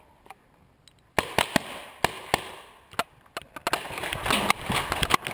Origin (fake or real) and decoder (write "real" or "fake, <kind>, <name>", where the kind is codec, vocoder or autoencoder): real